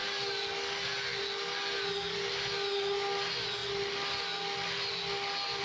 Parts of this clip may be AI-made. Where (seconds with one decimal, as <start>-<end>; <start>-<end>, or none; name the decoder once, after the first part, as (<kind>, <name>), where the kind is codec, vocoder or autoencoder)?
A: none